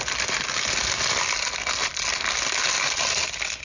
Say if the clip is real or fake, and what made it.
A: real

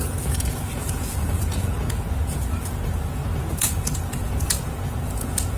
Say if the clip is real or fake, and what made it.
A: fake, vocoder, Vocos